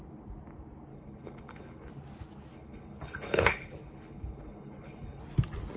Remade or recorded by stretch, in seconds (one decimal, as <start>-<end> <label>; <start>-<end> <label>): 0.0-0.9 recorded; 0.9-1.9 remade; 1.9-2.5 recorded; 2.5-5.2 remade; 5.2-5.8 recorded